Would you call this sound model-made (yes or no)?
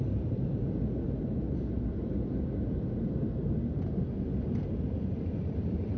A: no